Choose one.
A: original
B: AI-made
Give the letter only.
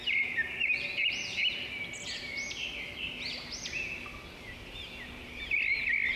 A